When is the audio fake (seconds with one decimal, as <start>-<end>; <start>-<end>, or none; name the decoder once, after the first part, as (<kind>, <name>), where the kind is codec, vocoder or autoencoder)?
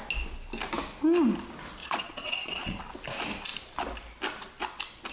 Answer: 1.8-2.8 (vocoder, Vocos)